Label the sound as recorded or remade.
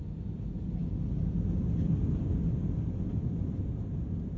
recorded